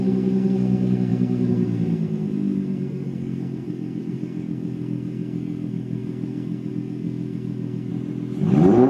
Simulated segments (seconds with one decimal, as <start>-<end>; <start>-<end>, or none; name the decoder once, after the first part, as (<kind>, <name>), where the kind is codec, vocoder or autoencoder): 0.0-7.9 (codec, SNAC)